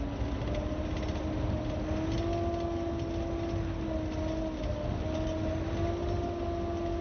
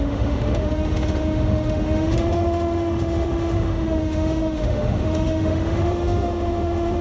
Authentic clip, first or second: first